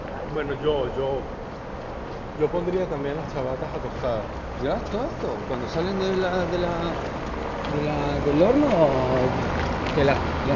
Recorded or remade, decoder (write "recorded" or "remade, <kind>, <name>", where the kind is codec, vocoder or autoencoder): recorded